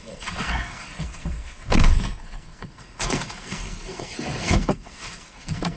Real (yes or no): no